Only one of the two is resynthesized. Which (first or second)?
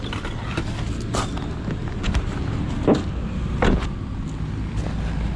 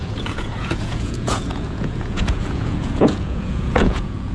second